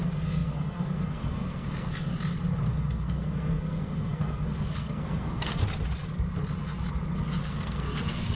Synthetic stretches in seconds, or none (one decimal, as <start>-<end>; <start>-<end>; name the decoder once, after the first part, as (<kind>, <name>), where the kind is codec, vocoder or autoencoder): 0.0-2.1 (codec, SNAC); 2.7-5.6; 7.4-8.3